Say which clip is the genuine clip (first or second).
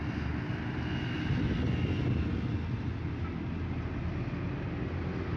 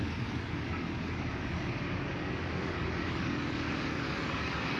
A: first